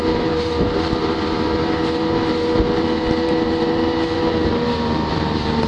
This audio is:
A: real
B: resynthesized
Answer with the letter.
B